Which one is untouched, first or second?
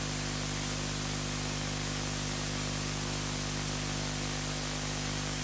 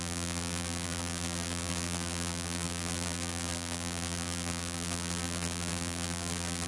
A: first